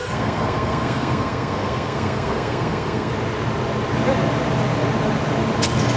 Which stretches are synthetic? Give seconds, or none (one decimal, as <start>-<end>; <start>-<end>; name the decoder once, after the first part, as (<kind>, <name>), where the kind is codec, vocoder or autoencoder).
0.0-3.1 (codec, SNAC)